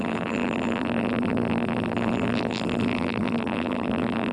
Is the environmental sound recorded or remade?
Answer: remade